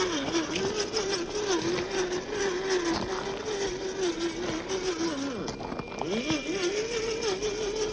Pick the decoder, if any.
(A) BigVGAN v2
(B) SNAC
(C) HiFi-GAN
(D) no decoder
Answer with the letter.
D